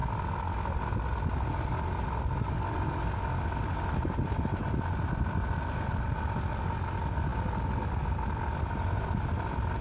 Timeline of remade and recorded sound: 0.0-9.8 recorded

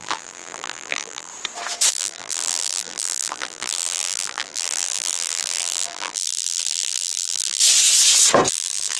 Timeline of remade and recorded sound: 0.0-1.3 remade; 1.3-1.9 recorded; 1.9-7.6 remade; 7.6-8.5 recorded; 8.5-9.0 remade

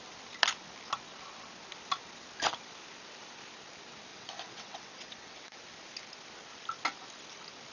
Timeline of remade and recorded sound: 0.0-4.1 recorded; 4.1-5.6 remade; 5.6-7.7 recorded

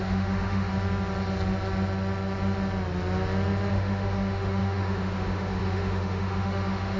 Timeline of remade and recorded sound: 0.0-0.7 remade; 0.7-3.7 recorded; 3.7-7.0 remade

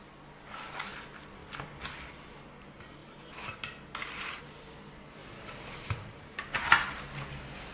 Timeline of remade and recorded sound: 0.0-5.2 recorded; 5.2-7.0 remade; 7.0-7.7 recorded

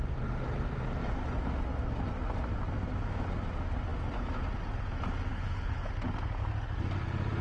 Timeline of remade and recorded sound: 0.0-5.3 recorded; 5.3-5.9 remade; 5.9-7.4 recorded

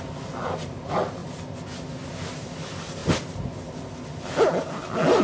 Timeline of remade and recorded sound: 0.0-5.2 recorded